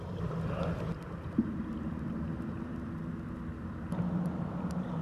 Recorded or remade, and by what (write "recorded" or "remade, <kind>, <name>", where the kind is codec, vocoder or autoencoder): recorded